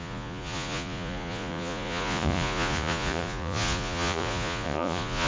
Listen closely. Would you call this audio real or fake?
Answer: fake